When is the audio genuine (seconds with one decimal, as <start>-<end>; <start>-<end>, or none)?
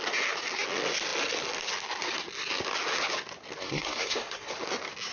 0.0-3.6; 4.5-5.1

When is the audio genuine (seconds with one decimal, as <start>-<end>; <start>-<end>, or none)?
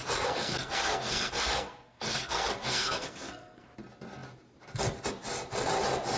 3.7-6.2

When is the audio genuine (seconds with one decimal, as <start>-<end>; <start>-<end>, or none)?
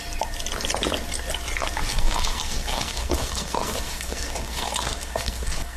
0.0-1.9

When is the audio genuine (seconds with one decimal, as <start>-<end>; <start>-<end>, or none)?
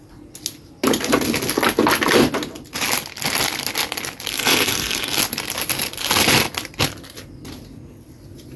0.0-4.3; 5.2-8.6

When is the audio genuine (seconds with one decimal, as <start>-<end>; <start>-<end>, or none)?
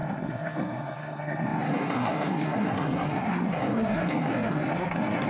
none